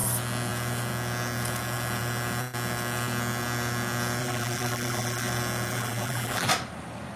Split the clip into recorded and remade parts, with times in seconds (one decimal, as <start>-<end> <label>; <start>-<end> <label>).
0.0-4.2 recorded; 4.2-5.3 remade; 5.3-5.7 recorded; 5.7-6.5 remade; 6.5-7.2 recorded